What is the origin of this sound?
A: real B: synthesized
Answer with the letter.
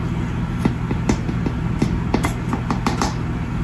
A